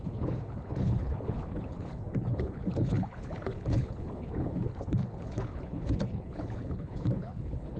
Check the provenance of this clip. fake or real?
fake